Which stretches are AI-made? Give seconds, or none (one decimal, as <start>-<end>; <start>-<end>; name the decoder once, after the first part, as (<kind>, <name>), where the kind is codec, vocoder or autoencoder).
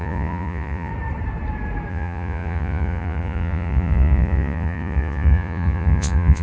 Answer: 0.0-0.9 (vocoder, Vocos); 1.9-6.4